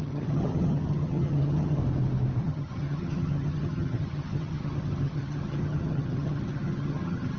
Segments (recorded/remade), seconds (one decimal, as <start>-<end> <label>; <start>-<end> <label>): 0.0-1.8 remade; 1.8-2.4 recorded; 2.4-7.4 remade